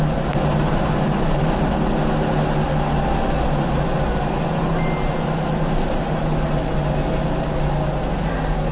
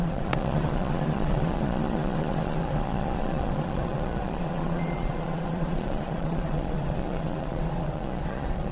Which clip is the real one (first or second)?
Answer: first